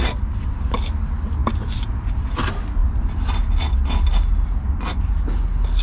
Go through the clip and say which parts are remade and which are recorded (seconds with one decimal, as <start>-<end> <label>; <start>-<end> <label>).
0.0-5.8 recorded

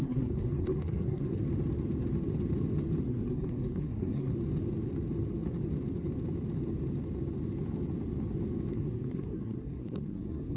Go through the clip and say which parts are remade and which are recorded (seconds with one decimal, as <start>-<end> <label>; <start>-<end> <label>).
0.0-1.3 remade; 1.3-3.0 recorded; 3.0-4.3 remade; 4.3-8.7 recorded; 8.7-10.6 remade

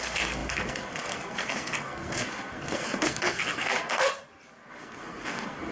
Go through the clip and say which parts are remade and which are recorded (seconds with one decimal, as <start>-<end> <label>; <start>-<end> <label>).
0.0-4.1 remade; 4.1-4.7 recorded; 4.7-5.7 remade

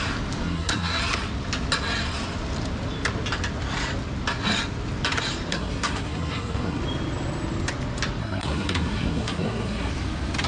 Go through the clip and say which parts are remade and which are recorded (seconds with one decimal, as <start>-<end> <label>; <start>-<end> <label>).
0.0-0.4 recorded; 0.4-1.0 remade; 1.0-5.5 recorded; 5.5-6.8 remade; 6.8-8.2 recorded; 8.2-9.9 remade; 9.9-10.5 recorded

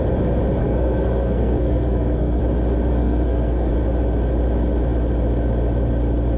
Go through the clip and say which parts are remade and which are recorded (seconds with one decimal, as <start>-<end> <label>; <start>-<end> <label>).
0.0-0.6 recorded; 0.6-2.4 remade; 2.4-2.9 recorded; 2.9-3.7 remade; 3.7-6.4 recorded

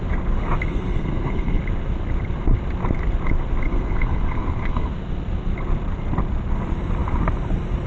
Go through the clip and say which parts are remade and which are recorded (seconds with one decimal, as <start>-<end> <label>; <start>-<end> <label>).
0.0-0.7 recorded; 0.7-1.6 remade; 1.6-3.7 recorded; 3.7-4.9 remade; 4.9-7.9 recorded